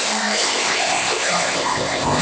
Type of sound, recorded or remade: remade